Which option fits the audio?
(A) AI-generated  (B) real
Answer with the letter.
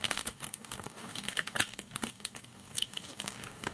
A